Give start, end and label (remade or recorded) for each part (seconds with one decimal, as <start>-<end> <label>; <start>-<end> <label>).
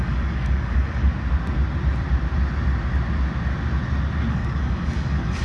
0.0-1.1 remade; 1.1-4.3 recorded; 4.3-5.4 remade